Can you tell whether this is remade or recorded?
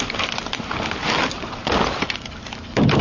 recorded